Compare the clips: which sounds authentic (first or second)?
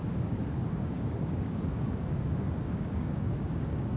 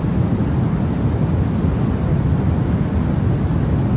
second